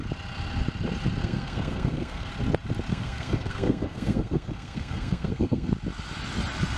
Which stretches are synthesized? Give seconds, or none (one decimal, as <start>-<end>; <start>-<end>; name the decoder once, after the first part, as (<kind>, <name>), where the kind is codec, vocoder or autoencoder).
1.2-2.3 (codec, SNAC); 2.9-5.7